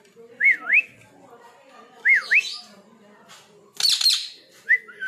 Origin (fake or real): real